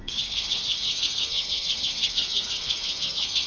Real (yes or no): no